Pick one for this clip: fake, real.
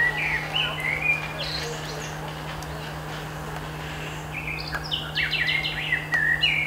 real